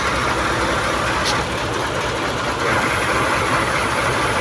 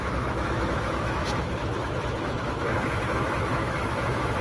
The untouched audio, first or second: first